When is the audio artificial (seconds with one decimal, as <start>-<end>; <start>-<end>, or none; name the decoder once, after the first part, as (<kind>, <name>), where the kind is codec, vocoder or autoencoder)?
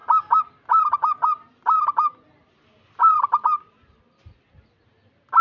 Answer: none